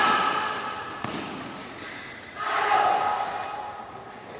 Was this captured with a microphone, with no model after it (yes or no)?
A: yes